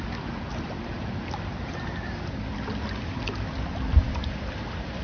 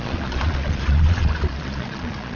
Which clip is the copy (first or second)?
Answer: second